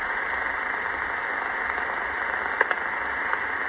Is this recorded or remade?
recorded